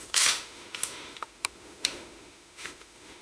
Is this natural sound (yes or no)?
no